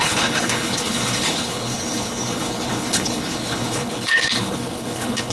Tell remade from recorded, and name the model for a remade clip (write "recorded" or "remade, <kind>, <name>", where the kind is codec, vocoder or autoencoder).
remade, codec, HILCodec